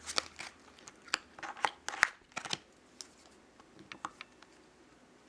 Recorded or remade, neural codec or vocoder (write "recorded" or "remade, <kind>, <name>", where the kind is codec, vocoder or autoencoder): recorded